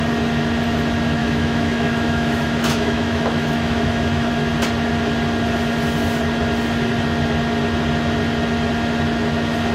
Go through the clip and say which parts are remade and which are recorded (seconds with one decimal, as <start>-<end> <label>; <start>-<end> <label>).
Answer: 0.0-1.2 recorded; 1.2-4.3 remade; 4.3-9.7 recorded